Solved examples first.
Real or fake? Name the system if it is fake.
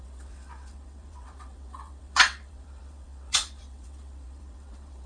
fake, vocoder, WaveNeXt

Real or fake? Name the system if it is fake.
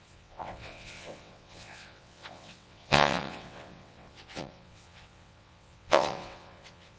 fake, vocoder, WaveNeXt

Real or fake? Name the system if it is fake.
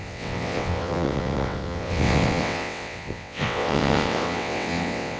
fake, vocoder, WaveNeXt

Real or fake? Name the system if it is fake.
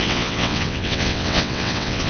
fake, vocoder, WaveNeXt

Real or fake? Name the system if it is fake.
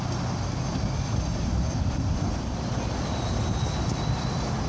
real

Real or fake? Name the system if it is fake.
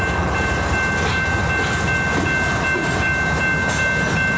real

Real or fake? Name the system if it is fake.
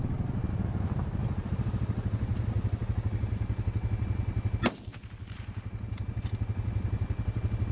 real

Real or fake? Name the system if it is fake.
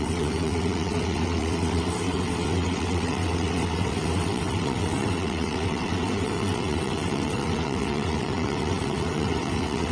fake, vocoder, WaveNeXt